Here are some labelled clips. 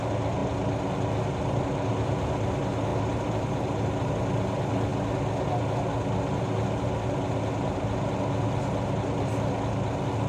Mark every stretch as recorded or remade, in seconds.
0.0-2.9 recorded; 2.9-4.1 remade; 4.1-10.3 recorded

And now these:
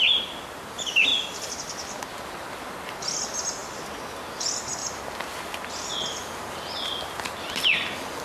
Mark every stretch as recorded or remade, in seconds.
0.0-4.8 recorded; 4.8-5.9 remade; 5.9-8.2 recorded

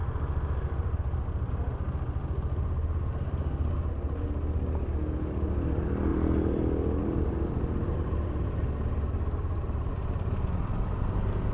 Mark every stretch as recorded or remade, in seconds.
0.0-6.1 recorded; 6.1-10.7 remade; 10.7-11.5 recorded

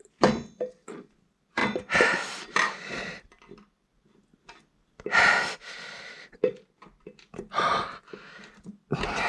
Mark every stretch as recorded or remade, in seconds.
0.0-1.6 recorded; 1.6-2.8 remade; 2.8-9.3 recorded